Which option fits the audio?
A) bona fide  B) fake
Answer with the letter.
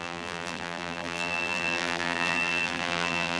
B